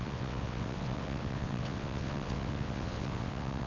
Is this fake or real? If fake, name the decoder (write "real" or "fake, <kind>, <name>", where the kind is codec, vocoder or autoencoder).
fake, vocoder, WaveNeXt